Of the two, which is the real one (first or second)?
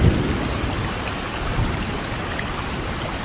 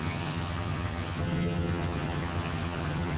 first